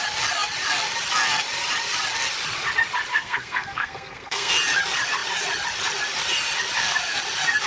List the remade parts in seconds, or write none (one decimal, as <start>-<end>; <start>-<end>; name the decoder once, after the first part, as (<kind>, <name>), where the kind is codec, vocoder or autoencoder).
3.1-4.5 (codec, SNAC)